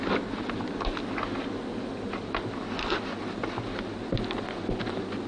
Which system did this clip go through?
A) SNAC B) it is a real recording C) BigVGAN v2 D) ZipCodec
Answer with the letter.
B